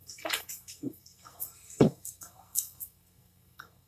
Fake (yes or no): yes